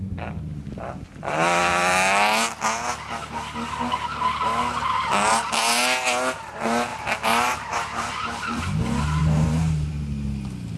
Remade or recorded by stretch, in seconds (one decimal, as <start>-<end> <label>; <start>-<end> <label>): 0.0-6.9 recorded; 6.9-8.6 remade; 8.6-9.2 recorded; 9.2-10.0 remade; 10.0-10.8 recorded